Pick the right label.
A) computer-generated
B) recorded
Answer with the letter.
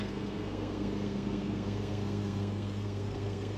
A